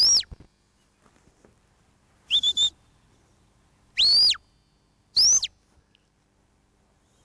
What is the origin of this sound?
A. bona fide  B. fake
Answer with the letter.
A